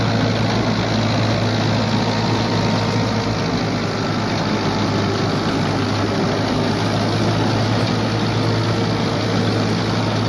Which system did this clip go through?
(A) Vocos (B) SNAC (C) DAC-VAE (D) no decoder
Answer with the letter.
D